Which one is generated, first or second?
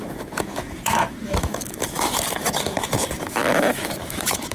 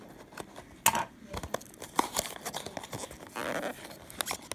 first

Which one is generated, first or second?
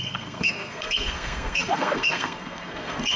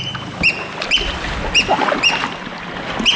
first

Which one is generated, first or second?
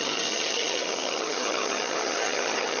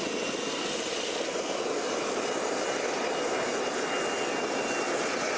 first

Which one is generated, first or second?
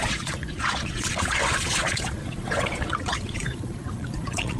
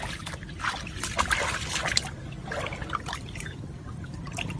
first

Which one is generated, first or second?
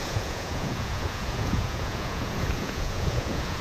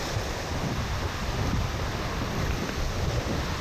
first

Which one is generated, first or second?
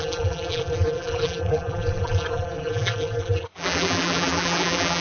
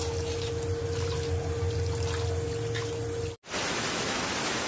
first